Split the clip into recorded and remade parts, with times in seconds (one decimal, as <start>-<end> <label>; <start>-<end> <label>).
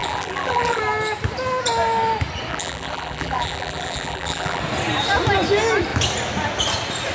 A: 0.0-0.8 remade; 0.8-2.5 recorded; 2.5-4.6 remade; 4.6-7.1 recorded